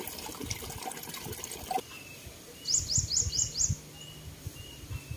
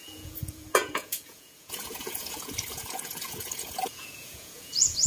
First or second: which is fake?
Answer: second